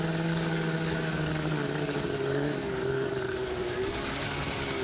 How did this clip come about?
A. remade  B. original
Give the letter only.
A